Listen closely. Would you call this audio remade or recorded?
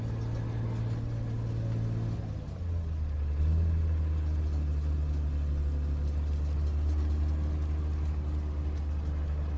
recorded